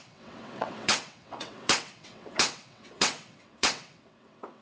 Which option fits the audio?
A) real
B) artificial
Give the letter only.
B